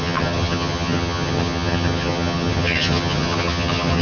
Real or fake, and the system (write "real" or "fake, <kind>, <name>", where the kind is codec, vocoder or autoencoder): fake, vocoder, HiFi-GAN